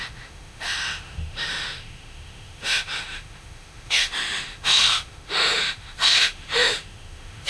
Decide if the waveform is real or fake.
fake